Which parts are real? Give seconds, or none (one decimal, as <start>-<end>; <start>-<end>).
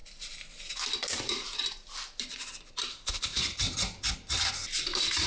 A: 0.0-2.9; 3.4-5.3